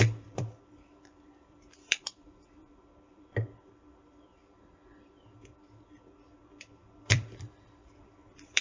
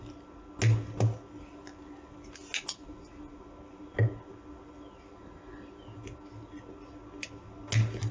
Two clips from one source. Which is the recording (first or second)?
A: second